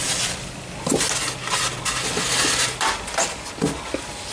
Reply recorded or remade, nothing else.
recorded